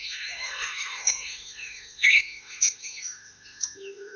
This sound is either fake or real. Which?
fake